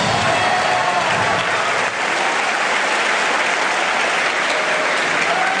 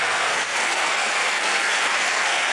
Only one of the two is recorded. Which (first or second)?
first